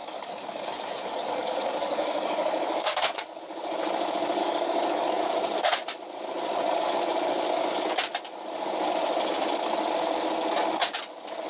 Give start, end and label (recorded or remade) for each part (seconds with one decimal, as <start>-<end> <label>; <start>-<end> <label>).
0.0-3.4 remade; 3.4-4.4 recorded; 4.4-5.2 remade; 5.2-11.5 recorded